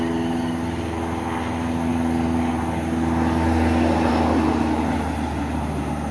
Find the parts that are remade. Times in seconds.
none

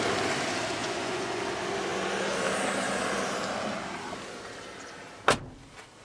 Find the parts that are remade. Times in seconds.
0.8-1.4

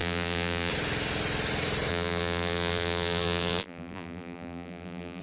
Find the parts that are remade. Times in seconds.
0.0-0.7; 1.9-5.2

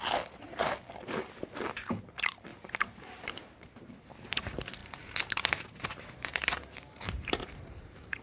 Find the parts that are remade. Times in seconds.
2.5-3.9; 4.8-8.2

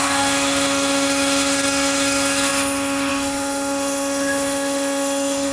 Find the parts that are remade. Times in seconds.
0.0-5.5

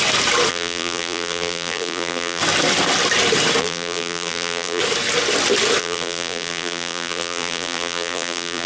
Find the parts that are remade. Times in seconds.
0.5-2.4; 3.6-4.8; 5.8-8.7

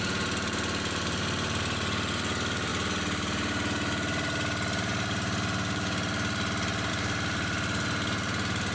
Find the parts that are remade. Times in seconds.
0.0-2.7; 6.9-8.7

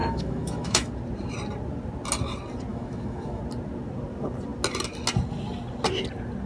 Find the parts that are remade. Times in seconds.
0.0-0.9; 2.7-3.4